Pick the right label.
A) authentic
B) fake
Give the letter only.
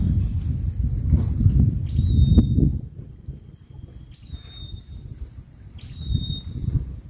A